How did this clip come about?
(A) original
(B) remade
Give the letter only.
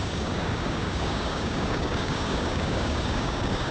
B